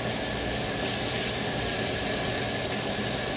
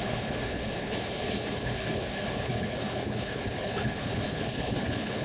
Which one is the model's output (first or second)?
second